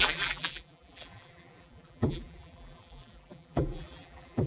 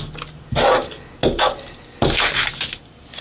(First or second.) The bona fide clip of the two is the second